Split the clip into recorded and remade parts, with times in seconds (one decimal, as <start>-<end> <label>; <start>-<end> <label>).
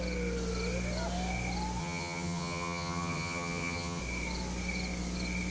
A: 0.0-1.8 recorded; 1.8-4.0 remade; 4.0-5.5 recorded